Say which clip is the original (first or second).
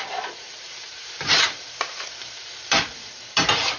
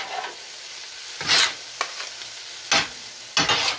second